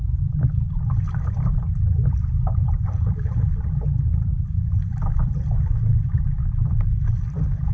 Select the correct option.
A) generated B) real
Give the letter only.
A